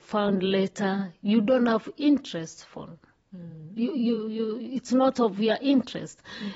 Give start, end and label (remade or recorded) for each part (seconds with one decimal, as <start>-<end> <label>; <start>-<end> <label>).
0.0-1.0 remade; 1.0-3.2 recorded; 3.2-6.6 remade